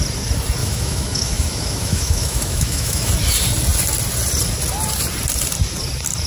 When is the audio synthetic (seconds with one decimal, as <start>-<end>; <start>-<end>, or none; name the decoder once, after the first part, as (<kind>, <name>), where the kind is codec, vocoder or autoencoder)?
0.6-3.1 (autoencoder, DAC-VAE)